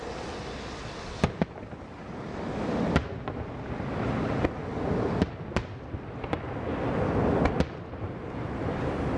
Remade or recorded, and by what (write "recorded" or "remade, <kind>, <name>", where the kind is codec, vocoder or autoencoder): recorded